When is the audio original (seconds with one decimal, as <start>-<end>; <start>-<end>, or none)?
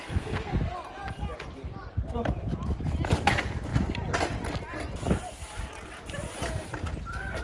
0.5-7.4